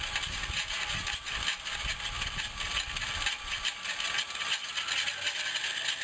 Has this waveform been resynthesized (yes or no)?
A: no